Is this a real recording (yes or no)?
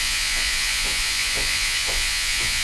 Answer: no